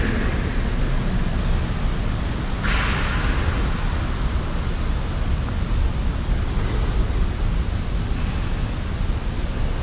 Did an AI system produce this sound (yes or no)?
no